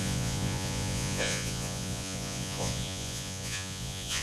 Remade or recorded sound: remade